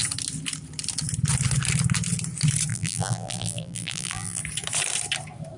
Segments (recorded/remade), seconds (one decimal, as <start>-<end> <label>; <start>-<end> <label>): 0.0-2.7 recorded; 2.7-4.4 remade; 4.4-5.6 recorded